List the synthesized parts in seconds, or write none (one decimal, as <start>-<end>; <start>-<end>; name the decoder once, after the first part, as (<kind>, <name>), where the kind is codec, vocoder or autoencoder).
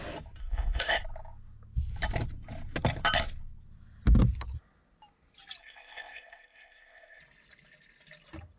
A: 0.4-1.0 (codec, ZipCodec); 5.6-7.2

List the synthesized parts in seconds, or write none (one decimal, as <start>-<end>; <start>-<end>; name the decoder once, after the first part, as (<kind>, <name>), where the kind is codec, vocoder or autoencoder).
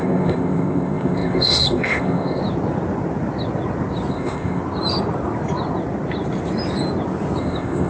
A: 0.0-2.4 (codec, ZipCodec); 4.1-4.6; 7.4-7.9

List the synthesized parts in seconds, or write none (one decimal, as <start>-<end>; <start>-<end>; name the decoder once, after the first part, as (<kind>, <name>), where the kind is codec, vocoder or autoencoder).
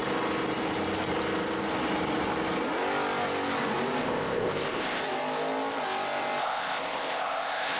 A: 4.0-5.0 (codec, ZipCodec); 6.4-7.8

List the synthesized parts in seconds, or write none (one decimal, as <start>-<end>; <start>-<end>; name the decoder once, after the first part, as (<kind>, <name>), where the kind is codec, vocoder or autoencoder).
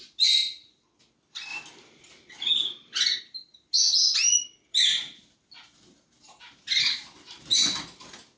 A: none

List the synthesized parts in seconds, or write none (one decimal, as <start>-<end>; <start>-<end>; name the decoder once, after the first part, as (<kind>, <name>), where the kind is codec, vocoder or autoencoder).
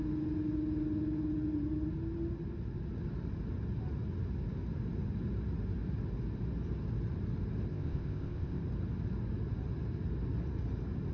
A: 7.7-8.6 (codec, ZipCodec)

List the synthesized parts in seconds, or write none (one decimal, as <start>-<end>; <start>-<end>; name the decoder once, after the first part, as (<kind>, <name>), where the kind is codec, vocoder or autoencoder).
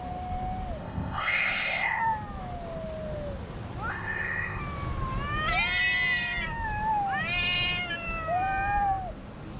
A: 0.8-2.0 (codec, ZipCodec); 3.9-4.6